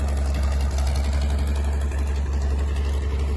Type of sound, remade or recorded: recorded